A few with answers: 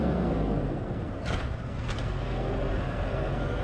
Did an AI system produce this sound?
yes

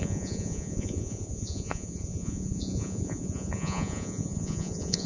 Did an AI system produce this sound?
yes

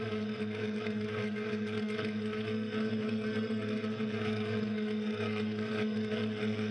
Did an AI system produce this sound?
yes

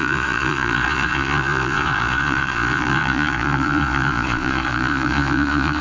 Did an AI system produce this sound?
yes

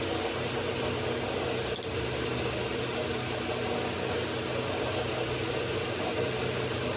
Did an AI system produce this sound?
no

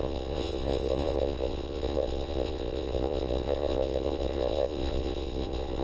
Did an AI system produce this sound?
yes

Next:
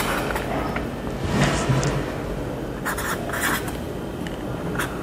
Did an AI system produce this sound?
no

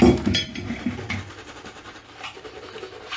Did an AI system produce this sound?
no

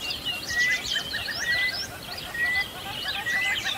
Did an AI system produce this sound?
no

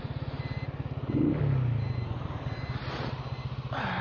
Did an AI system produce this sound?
no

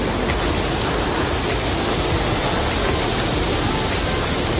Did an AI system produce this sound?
no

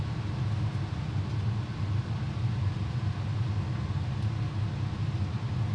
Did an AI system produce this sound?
no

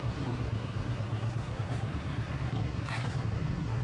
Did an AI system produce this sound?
yes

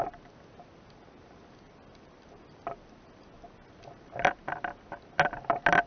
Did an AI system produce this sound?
no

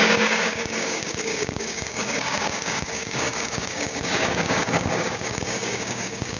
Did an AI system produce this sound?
yes